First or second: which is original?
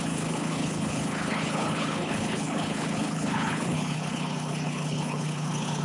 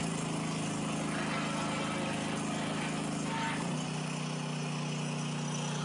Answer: second